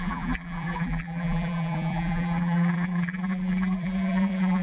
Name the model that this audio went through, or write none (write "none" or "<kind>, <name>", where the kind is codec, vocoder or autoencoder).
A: vocoder, BigVGAN v2